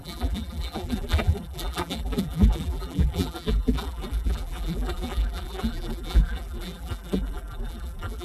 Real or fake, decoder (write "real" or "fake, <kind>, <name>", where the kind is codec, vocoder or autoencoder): fake, vocoder, BigVGAN v2